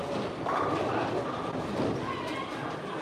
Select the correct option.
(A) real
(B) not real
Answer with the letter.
A